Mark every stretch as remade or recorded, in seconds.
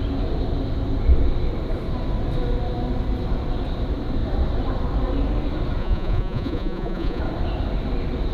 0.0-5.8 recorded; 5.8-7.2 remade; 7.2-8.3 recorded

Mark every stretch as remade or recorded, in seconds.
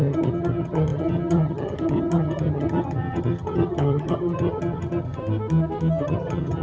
0.0-5.2 remade; 5.2-6.0 recorded; 6.0-6.6 remade